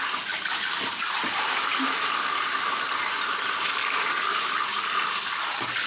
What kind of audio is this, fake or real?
real